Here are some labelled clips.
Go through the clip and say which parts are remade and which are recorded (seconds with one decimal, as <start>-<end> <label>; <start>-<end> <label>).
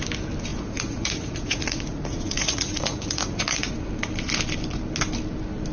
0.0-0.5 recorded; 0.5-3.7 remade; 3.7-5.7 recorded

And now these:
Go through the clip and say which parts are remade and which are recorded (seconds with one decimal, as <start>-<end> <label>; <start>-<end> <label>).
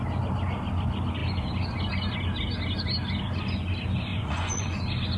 0.0-4.1 recorded; 4.1-4.8 remade; 4.8-5.2 recorded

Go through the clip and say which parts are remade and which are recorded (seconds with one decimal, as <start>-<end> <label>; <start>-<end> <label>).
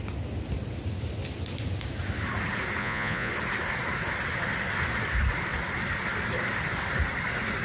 0.0-2.8 recorded; 2.8-3.3 remade; 3.3-7.6 recorded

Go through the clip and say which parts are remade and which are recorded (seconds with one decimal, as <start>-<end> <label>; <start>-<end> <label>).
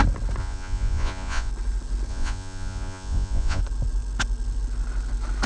0.0-0.4 recorded; 0.4-1.5 remade; 1.5-2.1 recorded; 2.1-3.6 remade; 3.6-5.5 recorded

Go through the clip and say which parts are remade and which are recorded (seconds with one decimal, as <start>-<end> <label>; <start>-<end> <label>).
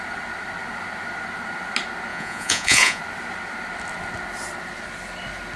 0.0-2.1 recorded; 2.1-3.0 remade; 3.0-5.6 recorded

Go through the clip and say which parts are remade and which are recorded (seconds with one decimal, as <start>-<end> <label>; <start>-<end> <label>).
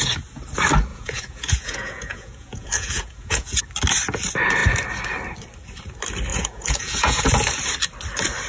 0.0-0.9 recorded; 0.9-3.6 remade; 3.6-6.3 recorded; 6.3-7.3 remade; 7.3-8.5 recorded